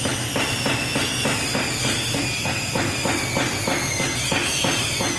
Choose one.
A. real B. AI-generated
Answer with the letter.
A